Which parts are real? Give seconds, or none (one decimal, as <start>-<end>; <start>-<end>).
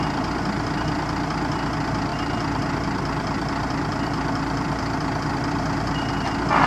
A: 0.0-2.1; 6.1-6.7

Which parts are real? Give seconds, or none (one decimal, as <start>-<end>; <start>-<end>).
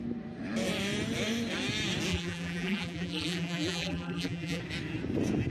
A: 0.0-2.1; 4.6-5.5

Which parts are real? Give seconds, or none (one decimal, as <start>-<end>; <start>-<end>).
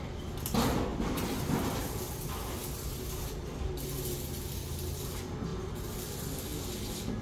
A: 0.0-7.2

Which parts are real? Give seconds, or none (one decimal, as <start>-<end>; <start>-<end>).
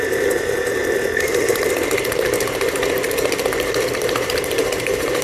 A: 0.8-3.9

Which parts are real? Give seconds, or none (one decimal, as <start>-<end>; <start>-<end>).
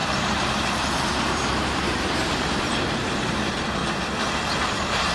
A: 3.8-4.5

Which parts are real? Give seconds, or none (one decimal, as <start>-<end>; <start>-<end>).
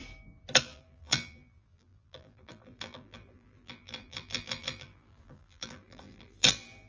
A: 0.0-0.6